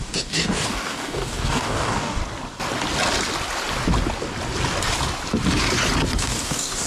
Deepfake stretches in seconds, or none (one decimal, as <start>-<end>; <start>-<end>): 0.0-2.2; 6.2-6.9